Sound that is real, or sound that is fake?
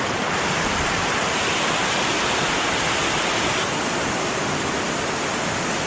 real